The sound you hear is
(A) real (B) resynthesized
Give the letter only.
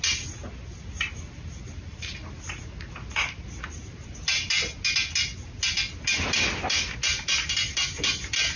A